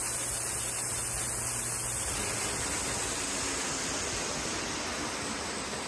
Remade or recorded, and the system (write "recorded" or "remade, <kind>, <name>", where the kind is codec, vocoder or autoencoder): recorded